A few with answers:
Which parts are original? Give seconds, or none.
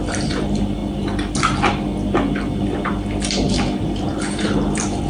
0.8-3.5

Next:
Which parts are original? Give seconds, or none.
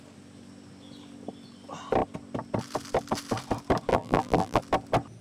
0.0-3.9; 4.6-5.2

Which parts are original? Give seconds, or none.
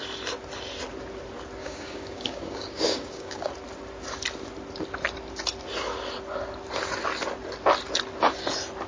0.0-1.6; 3.5-8.9